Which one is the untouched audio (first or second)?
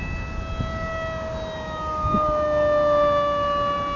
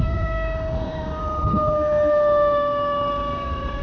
first